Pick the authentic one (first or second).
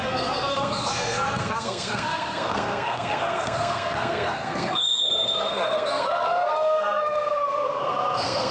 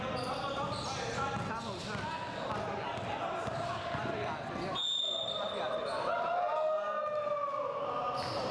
second